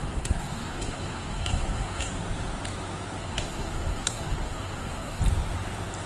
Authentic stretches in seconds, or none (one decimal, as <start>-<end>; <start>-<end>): 2.1-3.2; 5.2-6.1

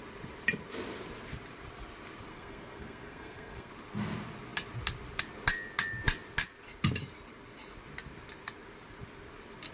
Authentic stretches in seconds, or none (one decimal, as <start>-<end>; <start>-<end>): 0.0-2.3; 3.7-9.7